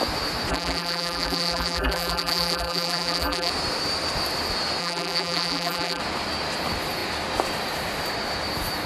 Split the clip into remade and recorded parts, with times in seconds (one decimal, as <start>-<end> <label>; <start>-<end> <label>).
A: 0.0-0.5 recorded; 0.5-3.5 remade; 3.5-4.8 recorded; 4.8-6.0 remade; 6.0-8.9 recorded